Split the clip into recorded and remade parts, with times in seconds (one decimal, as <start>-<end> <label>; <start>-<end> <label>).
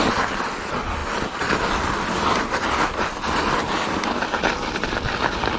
0.0-5.6 recorded